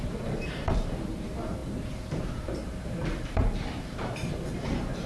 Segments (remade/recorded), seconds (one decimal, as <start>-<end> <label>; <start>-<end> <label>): 0.0-5.1 remade